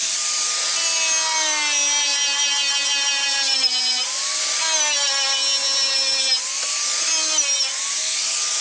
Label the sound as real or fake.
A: real